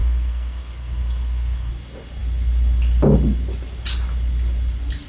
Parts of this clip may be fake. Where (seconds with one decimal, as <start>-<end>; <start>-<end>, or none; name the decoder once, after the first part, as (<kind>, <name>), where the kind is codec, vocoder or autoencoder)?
0.0-1.7 (codec, SNAC)